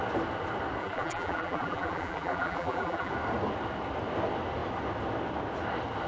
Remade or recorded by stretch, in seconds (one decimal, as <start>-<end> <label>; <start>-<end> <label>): 0.0-0.8 recorded; 0.8-3.1 remade; 3.1-6.1 recorded